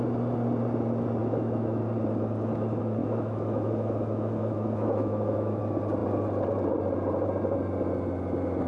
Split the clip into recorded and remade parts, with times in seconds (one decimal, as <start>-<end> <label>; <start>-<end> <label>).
0.0-1.2 recorded; 1.2-1.8 remade; 1.8-3.0 recorded; 3.0-5.6 remade; 5.6-8.7 recorded